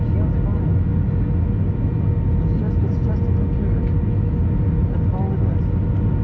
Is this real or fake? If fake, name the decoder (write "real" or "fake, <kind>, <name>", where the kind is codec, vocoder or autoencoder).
real